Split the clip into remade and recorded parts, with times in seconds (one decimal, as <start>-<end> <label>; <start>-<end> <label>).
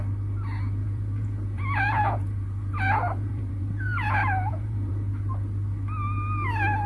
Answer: 0.0-0.8 recorded; 0.8-4.9 remade; 4.9-6.9 recorded